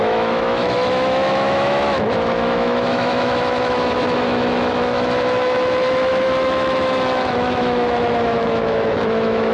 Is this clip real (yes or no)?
no